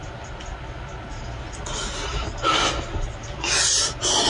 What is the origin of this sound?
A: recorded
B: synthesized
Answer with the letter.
A